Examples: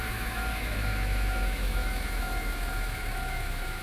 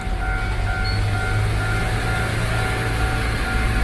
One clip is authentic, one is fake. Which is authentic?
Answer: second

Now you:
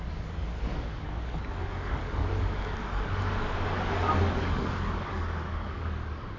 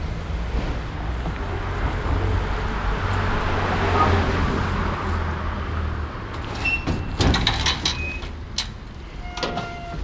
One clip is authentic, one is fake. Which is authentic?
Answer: second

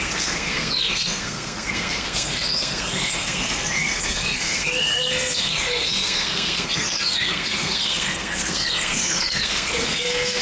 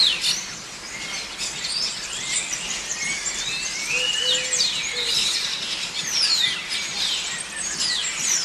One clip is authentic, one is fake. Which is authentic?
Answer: second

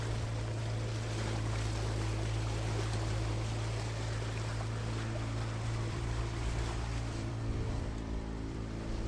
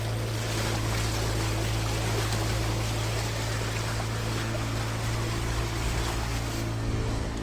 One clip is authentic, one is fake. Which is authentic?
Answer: second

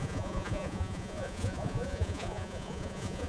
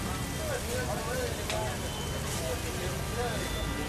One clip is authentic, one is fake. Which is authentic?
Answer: second